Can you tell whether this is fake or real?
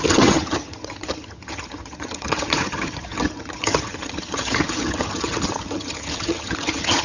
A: fake